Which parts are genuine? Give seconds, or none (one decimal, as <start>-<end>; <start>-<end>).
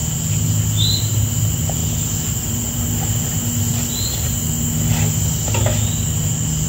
1.0-1.8; 2.5-3.7; 5.6-6.7